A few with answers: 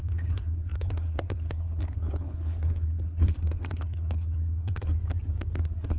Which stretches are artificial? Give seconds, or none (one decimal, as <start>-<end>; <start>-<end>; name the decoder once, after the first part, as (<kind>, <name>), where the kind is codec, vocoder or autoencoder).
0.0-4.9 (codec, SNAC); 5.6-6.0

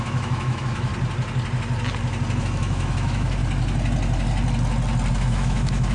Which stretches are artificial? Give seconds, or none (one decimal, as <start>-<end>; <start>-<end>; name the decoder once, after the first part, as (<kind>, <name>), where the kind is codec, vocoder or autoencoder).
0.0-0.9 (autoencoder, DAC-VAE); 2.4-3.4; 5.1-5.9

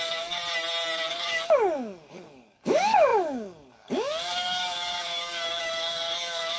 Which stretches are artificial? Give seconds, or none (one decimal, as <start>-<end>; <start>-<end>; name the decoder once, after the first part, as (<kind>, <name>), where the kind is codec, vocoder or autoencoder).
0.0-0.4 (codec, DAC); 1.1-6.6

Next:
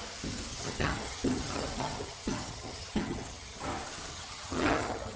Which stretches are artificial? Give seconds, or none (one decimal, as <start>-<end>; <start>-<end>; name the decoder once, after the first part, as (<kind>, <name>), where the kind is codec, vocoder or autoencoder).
0.5-3.6 (vocoder, HiFi-GAN); 4.1-5.2